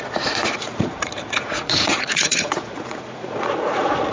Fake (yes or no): yes